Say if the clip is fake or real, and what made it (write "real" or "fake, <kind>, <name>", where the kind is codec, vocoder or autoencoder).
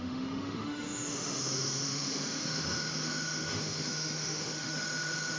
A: fake, autoencoder, DAC-VAE